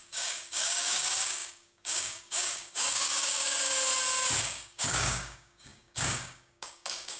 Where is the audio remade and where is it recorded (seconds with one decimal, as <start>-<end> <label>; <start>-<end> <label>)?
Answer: 0.0-3.7 remade; 3.7-4.4 recorded; 4.4-7.2 remade